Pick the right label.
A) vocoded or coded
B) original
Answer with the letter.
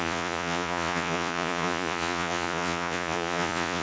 A